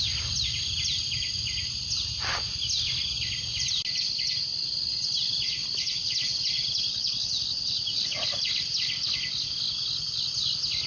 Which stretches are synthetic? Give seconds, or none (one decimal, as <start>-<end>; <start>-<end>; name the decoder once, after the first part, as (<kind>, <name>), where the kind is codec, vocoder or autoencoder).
none